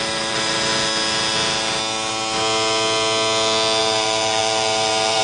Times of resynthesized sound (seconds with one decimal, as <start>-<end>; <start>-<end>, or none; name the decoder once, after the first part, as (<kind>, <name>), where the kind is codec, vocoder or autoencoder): 0.0-0.7 (vocoder, BigVGAN v2); 3.8-5.2